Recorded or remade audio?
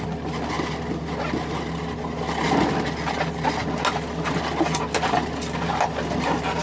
recorded